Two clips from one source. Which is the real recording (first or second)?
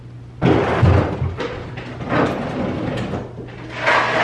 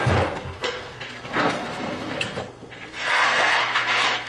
first